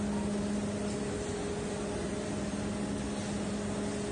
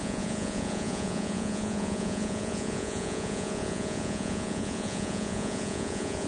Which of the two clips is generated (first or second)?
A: second